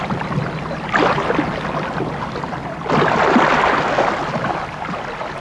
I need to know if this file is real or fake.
real